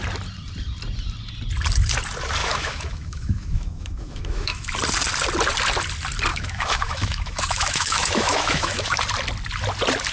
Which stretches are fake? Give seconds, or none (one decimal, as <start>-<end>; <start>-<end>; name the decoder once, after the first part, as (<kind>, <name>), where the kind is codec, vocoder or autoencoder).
2.4-4.7 (autoencoder, DAC-VAE); 6.3-9.0